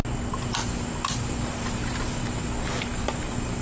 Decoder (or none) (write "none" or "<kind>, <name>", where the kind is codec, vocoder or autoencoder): none